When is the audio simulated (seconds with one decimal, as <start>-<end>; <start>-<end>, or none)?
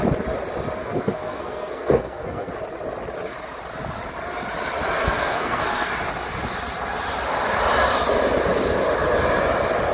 0.8-2.5; 5.0-5.9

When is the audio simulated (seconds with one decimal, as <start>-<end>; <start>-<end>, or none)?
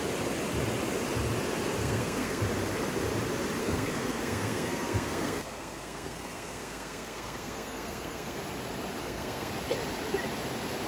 1.8-2.4; 3.6-8.4; 9.0-9.5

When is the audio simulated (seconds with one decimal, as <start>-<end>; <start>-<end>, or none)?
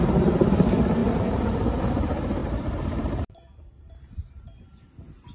1.0-1.8; 2.4-4.6